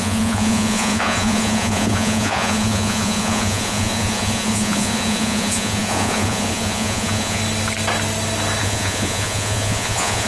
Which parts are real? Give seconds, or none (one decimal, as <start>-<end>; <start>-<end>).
7.4-8.6